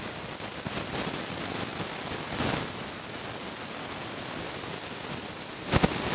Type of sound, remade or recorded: recorded